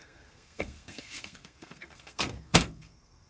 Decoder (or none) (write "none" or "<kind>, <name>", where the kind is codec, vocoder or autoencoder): codec, SNAC